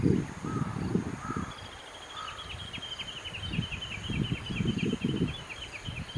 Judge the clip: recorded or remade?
recorded